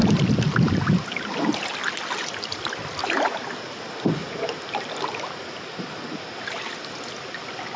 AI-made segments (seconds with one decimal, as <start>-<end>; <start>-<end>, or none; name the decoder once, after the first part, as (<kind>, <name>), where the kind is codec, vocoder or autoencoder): 0.0-3.2 (vocoder, BigVGAN v2); 4.2-6.1